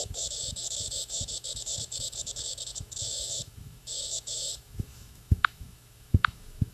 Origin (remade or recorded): remade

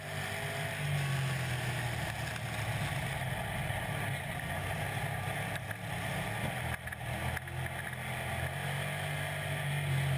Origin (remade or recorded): recorded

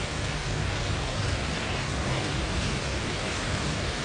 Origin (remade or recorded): remade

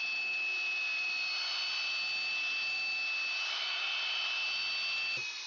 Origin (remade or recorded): recorded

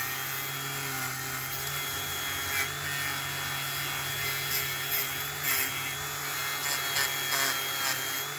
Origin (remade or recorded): recorded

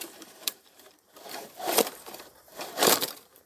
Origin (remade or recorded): remade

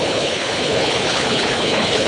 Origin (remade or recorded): remade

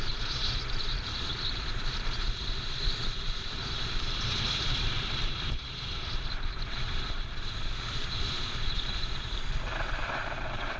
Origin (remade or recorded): remade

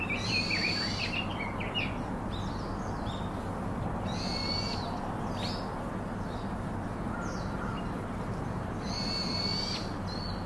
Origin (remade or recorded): recorded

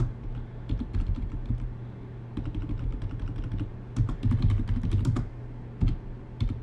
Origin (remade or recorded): recorded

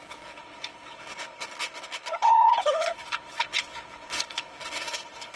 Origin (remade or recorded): remade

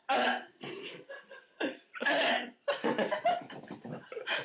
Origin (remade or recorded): recorded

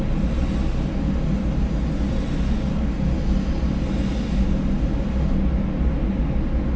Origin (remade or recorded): recorded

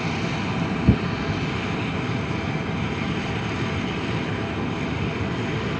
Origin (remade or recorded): recorded